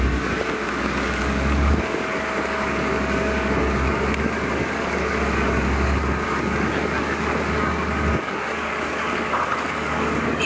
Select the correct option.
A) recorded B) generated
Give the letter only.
B